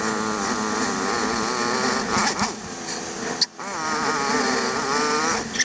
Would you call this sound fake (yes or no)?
no